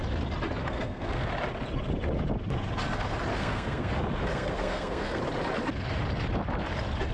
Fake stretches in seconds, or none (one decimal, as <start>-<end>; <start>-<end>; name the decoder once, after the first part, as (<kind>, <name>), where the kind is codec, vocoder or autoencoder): 0.6-1.3 (codec, SNAC); 3.3-3.9; 4.3-5.2